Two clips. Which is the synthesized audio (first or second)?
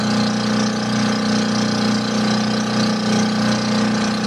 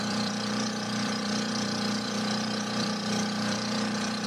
second